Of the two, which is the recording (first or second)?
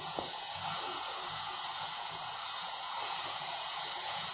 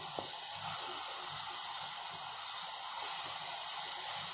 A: second